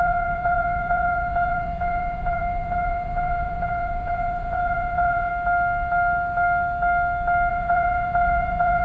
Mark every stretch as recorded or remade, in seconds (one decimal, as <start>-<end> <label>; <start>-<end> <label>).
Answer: 0.0-5.3 remade; 5.3-7.5 recorded; 7.5-8.8 remade